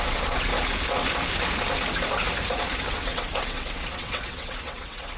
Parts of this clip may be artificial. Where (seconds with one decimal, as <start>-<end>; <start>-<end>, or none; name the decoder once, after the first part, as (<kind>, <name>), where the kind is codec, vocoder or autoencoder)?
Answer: 0.0-0.5 (vocoder, WaveNeXt); 2.9-5.2